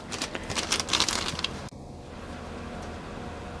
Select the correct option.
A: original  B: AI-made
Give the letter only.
A